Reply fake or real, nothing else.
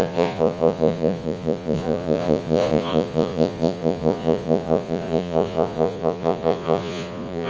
fake